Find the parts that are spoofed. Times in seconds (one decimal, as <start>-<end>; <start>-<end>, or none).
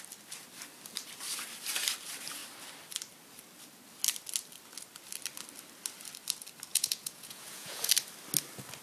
6.7-7.9